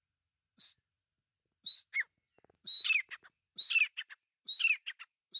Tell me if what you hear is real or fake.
real